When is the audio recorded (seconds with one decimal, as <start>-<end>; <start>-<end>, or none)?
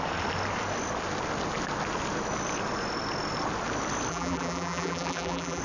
0.0-4.1